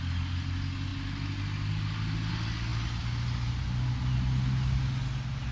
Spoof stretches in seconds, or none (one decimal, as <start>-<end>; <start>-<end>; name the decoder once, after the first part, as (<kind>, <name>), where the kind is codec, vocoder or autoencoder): none

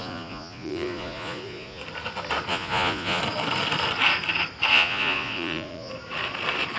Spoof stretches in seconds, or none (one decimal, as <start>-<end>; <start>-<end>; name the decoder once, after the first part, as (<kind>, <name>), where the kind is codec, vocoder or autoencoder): 0.0-1.8 (vocoder, Vocos); 2.5-3.2; 4.7-5.9

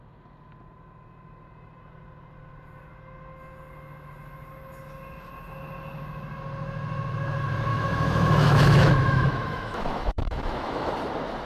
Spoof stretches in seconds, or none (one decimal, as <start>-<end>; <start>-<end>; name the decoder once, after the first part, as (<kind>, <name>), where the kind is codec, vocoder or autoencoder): 7.7-10.9 (autoencoder, DAC-VAE)

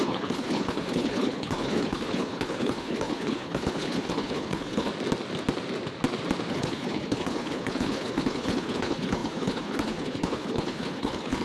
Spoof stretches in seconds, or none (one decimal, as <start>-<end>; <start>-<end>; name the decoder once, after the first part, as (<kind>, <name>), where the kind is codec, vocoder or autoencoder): 0.0-4.9 (codec, HILCodec); 6.5-11.4

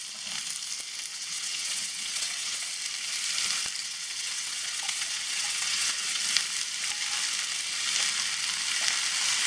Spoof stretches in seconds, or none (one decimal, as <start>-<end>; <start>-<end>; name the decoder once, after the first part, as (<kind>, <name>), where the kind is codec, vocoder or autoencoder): 1.1-2.7 (vocoder, WaveNeXt); 3.8-6.2

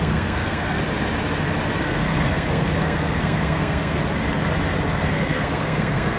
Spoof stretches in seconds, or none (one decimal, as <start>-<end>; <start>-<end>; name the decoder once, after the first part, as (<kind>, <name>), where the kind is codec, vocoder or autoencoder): 0.0-0.8 (codec, SNAC); 1.8-4.0; 4.9-6.2